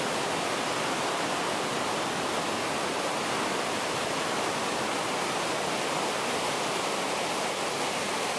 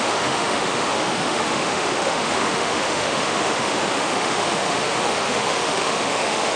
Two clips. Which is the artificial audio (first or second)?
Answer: second